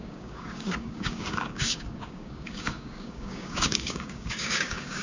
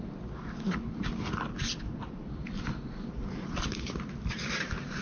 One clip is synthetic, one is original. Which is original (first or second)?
second